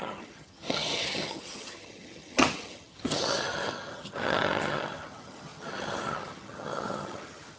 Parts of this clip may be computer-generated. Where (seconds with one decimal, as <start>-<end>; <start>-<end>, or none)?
0.0-7.6

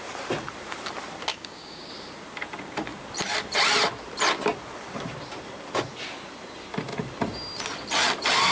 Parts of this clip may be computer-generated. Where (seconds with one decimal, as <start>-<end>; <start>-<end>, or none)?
1.3-1.9

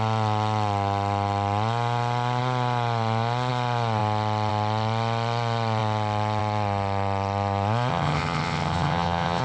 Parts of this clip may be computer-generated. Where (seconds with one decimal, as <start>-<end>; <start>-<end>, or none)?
7.9-9.4

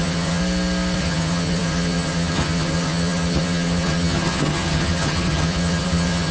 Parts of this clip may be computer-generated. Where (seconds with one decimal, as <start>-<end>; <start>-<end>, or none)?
0.0-0.4; 1.0-6.3